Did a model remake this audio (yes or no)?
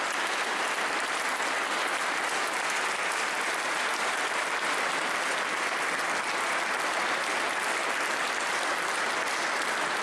no